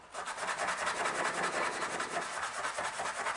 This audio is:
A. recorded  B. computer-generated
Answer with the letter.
A